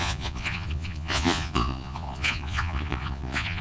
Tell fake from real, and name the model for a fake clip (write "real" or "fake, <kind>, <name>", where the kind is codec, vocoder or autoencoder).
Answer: fake, vocoder, Vocos